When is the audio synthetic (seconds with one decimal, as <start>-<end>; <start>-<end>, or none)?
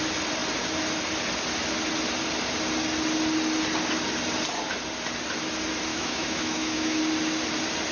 5.9-7.0